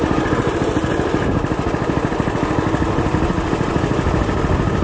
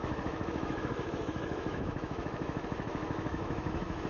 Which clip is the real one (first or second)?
first